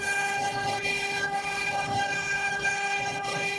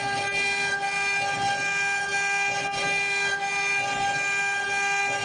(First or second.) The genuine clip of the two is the second